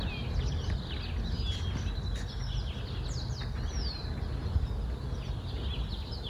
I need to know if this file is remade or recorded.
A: recorded